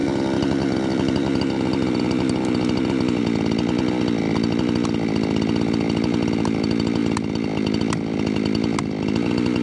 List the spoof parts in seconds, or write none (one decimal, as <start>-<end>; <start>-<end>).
0.0-3.2